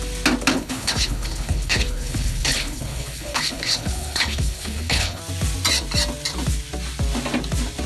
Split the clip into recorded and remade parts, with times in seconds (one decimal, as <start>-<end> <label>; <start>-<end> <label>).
0.0-0.5 recorded; 0.5-5.2 remade; 5.2-7.9 recorded